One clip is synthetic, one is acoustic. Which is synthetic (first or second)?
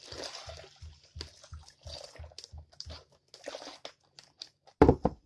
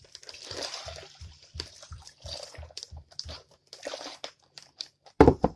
second